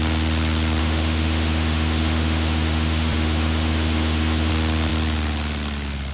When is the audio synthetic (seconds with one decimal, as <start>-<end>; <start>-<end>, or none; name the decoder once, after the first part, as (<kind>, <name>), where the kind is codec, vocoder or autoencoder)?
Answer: 0.8-4.5 (autoencoder, DAC-VAE)